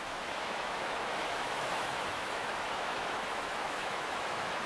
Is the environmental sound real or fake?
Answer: fake